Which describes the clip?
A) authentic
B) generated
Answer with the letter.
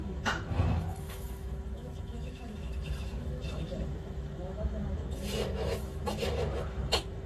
B